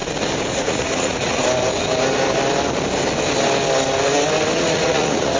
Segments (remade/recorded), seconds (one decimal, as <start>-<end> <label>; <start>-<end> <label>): 0.0-0.5 recorded; 0.5-1.4 remade; 1.4-4.6 recorded; 4.6-5.4 remade